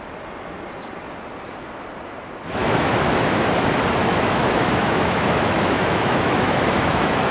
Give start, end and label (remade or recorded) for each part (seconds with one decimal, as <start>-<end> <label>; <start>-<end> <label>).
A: 0.0-2.6 recorded; 2.6-3.5 remade; 3.5-4.0 recorded; 4.0-7.3 remade